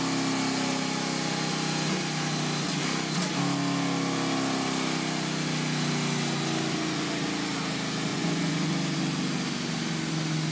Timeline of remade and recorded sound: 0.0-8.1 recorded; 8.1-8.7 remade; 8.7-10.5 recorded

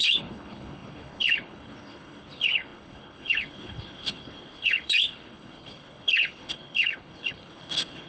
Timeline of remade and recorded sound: 0.0-8.1 remade